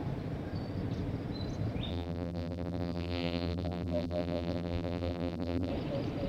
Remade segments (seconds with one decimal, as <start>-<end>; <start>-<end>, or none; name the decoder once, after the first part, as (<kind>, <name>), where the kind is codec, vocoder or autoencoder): 1.9-5.7 (vocoder, BigVGAN v2)